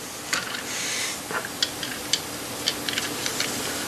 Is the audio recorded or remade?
recorded